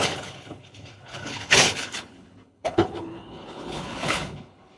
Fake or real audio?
fake